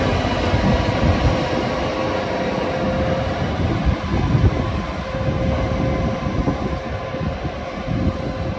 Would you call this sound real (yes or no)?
yes